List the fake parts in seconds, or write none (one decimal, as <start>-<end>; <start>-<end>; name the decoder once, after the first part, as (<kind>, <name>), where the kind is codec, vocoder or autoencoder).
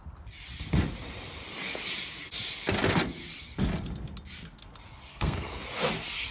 5.1-5.6 (codec, SNAC)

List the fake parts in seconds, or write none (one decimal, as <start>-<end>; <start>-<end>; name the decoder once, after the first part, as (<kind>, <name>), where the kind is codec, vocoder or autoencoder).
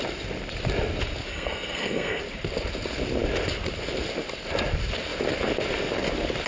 1.3-2.2 (codec, SNAC)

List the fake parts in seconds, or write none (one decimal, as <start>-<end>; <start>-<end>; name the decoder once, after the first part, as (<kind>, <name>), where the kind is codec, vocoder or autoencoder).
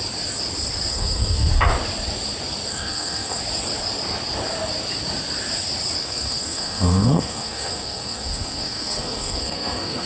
0.9-1.5 (codec, SNAC); 2.7-3.4; 6.0-10.1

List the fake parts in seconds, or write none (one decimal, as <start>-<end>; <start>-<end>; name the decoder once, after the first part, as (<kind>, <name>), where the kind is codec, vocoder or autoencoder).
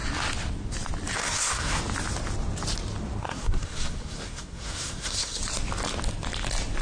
1.2-1.8 (codec, SNAC); 3.2-5.4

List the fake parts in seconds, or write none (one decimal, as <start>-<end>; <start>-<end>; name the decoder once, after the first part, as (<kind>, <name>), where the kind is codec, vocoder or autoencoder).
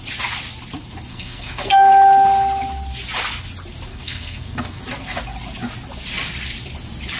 1.1-1.9 (codec, SNAC); 3.9-4.8